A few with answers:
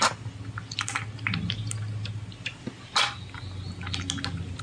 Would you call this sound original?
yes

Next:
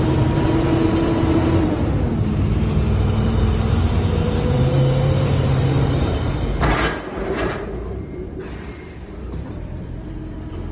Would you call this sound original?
no